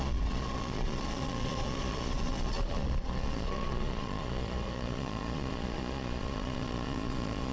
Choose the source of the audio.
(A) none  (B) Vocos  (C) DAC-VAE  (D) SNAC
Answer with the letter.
B